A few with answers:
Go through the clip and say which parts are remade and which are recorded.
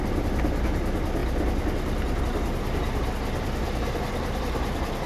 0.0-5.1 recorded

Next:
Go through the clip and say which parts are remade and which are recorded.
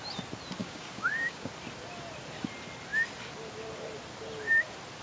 0.0-0.6 recorded; 0.6-1.5 remade; 1.5-5.0 recorded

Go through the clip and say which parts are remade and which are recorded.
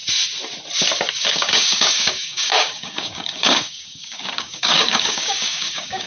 0.0-1.1 recorded; 1.1-6.1 remade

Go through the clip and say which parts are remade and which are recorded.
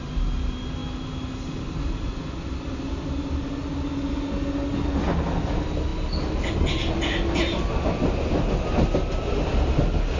0.0-10.2 recorded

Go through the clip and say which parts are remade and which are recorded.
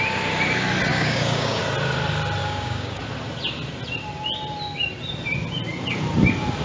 0.0-0.9 recorded; 0.9-1.6 remade; 1.6-2.4 recorded; 2.4-3.0 remade; 3.0-6.6 recorded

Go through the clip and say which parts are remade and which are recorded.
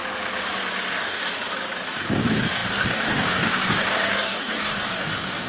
0.0-0.9 recorded; 0.9-1.3 remade; 1.3-1.9 recorded; 1.9-5.5 remade